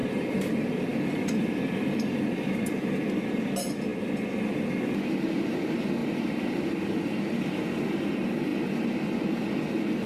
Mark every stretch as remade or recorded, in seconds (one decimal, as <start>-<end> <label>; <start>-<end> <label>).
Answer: 0.0-2.9 remade; 2.9-6.0 recorded; 6.0-7.2 remade; 7.2-10.1 recorded